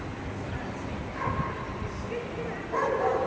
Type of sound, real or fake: real